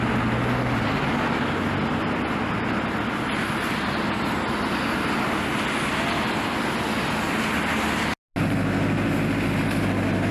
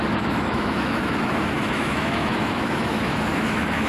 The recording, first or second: first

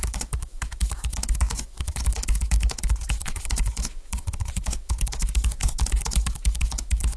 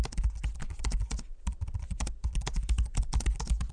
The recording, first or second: second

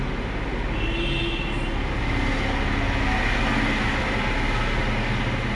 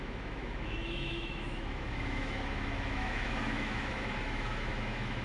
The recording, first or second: first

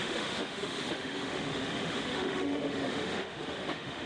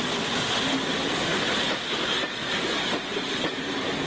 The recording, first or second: second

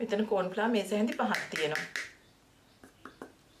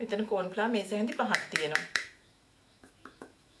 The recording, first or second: first